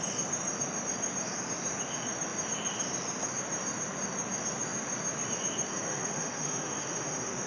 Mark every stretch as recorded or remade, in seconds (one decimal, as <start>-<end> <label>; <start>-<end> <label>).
0.0-5.7 recorded; 5.7-7.5 remade